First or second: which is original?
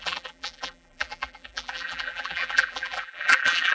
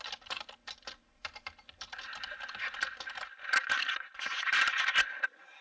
second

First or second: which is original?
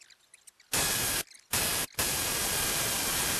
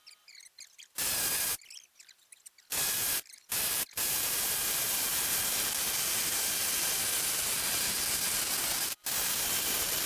first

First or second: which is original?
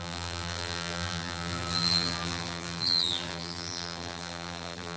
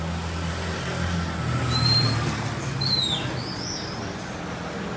second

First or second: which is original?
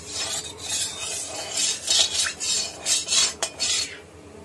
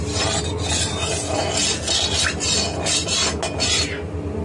second